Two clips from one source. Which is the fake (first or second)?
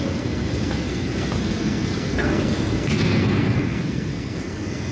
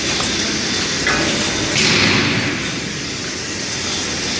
first